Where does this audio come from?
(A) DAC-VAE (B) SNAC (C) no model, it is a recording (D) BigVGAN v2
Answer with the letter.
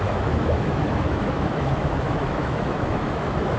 A